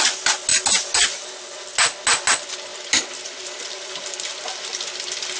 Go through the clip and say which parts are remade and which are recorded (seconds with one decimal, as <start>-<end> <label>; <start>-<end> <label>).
0.0-2.7 recorded; 2.7-5.4 remade